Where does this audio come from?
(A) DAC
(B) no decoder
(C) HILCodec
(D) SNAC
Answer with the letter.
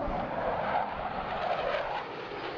B